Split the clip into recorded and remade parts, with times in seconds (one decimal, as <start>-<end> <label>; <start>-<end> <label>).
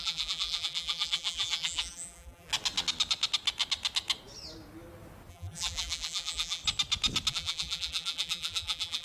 0.0-2.5 remade; 2.5-5.3 recorded; 5.3-6.6 remade; 6.6-7.3 recorded; 7.3-9.0 remade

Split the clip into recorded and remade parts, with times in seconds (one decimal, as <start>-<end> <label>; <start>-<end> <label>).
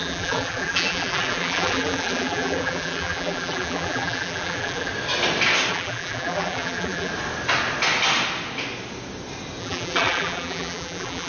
0.0-4.9 remade; 4.9-5.7 recorded; 5.7-7.1 remade; 7.1-9.6 recorded; 9.6-11.3 remade